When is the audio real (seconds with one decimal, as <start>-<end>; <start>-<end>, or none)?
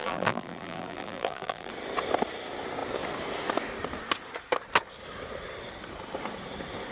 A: 1.7-6.9